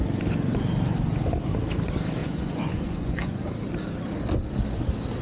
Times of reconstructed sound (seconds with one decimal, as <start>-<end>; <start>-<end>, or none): 2.2-3.4